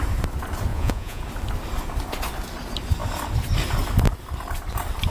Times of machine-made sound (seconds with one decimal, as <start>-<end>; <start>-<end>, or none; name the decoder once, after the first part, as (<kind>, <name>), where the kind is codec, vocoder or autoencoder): 0.7-1.2 (vocoder, Vocos)